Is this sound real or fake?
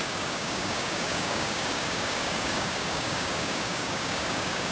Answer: fake